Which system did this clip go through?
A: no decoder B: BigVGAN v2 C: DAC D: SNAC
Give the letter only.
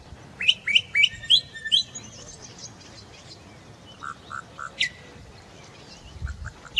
A